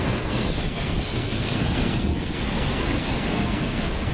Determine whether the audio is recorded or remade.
remade